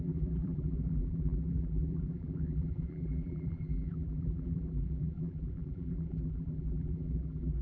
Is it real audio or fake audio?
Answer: fake